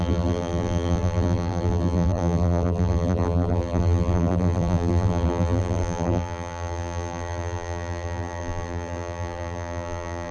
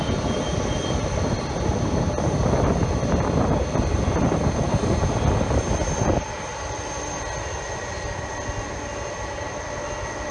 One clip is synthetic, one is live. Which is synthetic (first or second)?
first